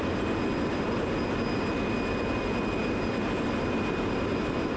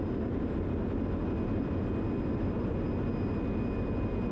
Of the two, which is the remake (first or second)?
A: first